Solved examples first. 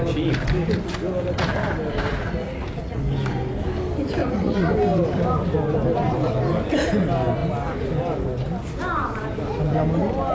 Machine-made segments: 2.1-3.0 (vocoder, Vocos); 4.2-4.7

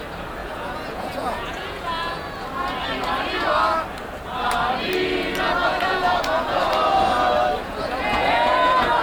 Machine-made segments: 0.4-2.3 (vocoder, Vocos); 5.6-6.6; 7.6-9.0

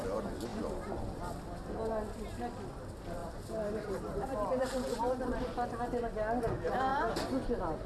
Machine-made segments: 3.2-5.0 (vocoder, BigVGAN v2)

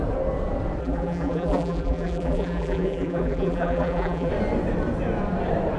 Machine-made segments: 0.8-4.3 (vocoder, BigVGAN v2)

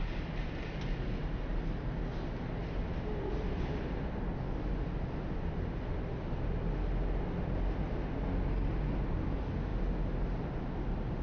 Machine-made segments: none

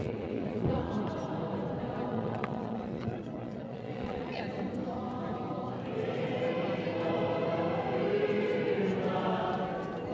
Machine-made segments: 0.0-0.9 (vocoder, Vocos); 2.1-4.4

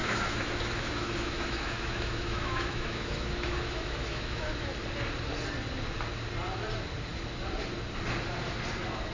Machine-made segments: 0.0-4.7 (autoencoder, DAC-VAE)